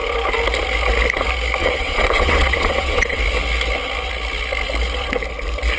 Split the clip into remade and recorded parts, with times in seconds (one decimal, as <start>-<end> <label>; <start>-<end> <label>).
0.0-1.6 recorded; 1.6-3.2 remade; 3.2-5.8 recorded